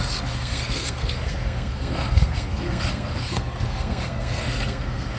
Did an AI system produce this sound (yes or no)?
yes